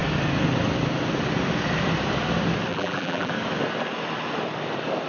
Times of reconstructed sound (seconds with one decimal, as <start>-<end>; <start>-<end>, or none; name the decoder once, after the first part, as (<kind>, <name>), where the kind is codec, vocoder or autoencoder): 2.7-3.3 (vocoder, BigVGAN v2)